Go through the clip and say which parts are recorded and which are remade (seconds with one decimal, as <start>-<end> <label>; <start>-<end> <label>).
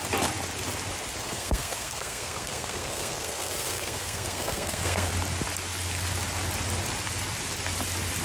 0.0-1.2 recorded; 1.2-5.1 remade; 5.1-8.2 recorded